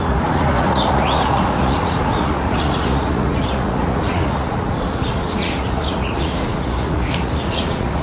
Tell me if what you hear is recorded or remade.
remade